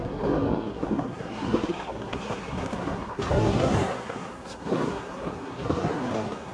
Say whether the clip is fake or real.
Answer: fake